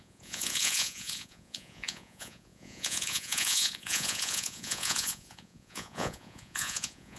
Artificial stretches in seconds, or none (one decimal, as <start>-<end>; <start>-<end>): 0.0-7.2

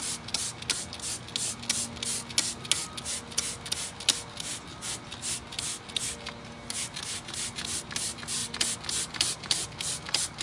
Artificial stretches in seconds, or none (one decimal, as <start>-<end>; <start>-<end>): none